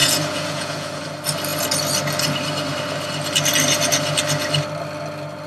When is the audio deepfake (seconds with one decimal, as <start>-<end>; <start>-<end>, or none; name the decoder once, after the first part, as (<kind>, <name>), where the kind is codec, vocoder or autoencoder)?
0.0-1.0 (vocoder, Vocos)